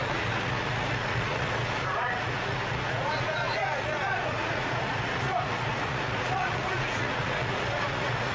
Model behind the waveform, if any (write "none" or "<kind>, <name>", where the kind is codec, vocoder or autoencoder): vocoder, Vocos